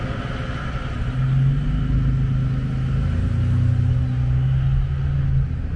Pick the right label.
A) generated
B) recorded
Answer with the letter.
B